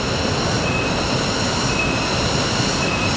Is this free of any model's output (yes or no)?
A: yes